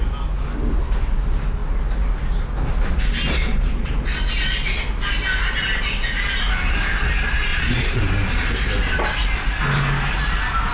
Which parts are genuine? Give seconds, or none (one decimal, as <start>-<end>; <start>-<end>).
0.0-3.4; 3.9-7.5; 8.0-10.7